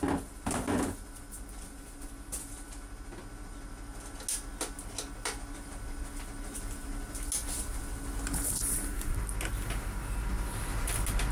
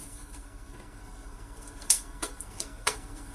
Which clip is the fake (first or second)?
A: second